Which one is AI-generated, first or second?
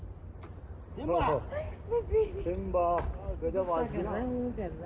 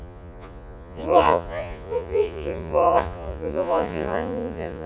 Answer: second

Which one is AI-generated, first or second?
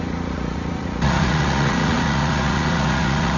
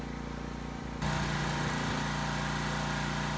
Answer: first